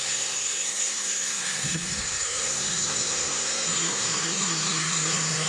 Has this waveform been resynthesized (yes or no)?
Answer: yes